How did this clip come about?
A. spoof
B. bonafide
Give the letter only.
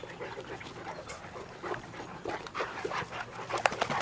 B